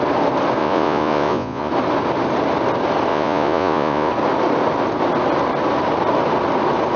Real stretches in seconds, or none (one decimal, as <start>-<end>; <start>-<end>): 0.0-0.6; 1.7-3.1; 4.1-7.0